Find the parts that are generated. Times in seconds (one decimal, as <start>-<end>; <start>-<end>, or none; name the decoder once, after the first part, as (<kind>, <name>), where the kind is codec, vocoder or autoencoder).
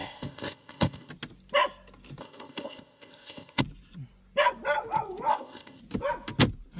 0.0-1.1 (codec, ZipCodec); 2.2-3.6; 5.3-5.8